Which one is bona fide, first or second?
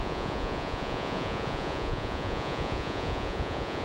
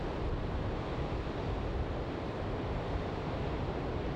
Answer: second